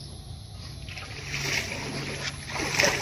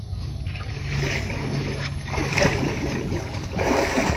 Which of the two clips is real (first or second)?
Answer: first